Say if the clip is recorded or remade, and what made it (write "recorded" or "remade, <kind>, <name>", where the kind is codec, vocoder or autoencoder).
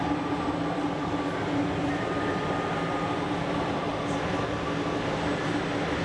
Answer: recorded